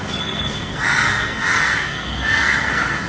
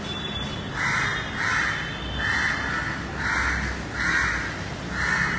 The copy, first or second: first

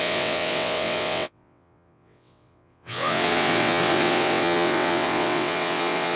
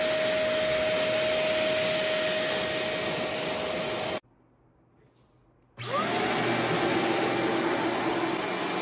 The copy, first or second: first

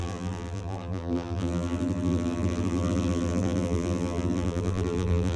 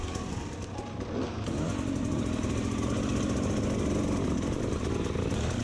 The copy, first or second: first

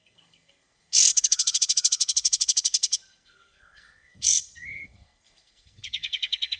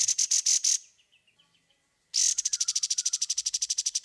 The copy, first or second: first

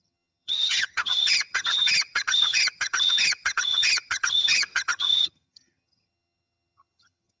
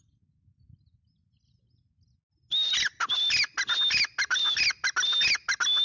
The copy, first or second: first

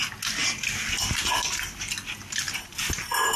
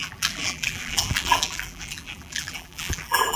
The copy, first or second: second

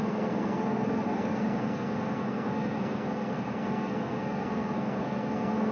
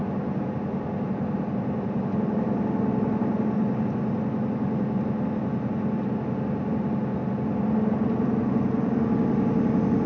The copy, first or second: first